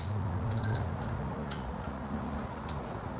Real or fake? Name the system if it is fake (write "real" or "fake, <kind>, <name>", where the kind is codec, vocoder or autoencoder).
fake, vocoder, Vocos